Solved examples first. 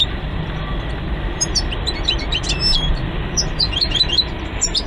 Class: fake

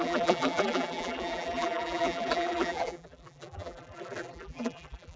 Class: fake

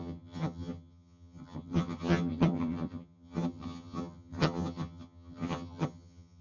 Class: fake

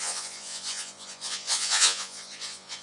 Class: fake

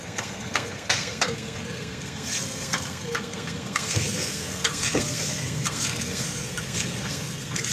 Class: fake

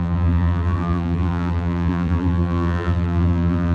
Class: fake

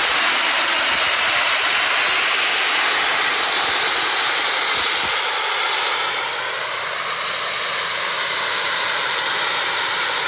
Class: real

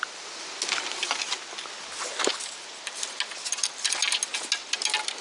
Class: real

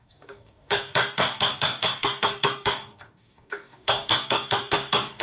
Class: fake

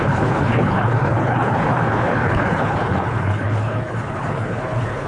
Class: fake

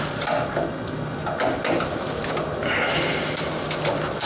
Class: real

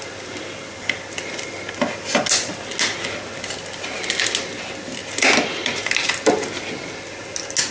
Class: real